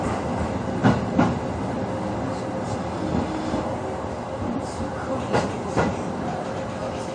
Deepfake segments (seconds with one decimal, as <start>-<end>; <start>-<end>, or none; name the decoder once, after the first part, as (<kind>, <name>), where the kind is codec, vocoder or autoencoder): none